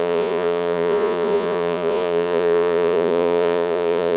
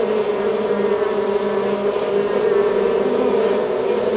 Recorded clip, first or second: second